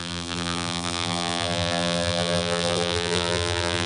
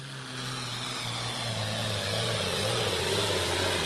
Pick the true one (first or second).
second